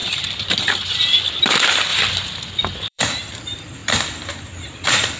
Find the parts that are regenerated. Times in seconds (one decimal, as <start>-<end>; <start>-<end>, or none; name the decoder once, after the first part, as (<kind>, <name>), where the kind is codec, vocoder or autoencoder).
1.3-3.8 (vocoder, BigVGAN v2); 4.7-5.2